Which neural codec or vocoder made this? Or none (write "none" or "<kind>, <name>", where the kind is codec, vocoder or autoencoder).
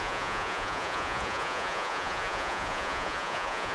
vocoder, Vocos